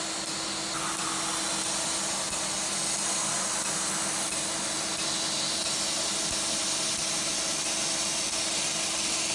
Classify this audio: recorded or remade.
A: recorded